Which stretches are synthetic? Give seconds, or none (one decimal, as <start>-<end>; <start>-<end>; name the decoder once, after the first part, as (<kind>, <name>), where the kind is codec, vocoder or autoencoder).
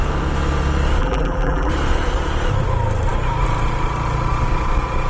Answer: 1.0-1.7 (vocoder, BigVGAN v2)